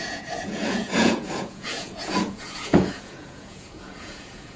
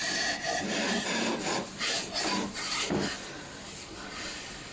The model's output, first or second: first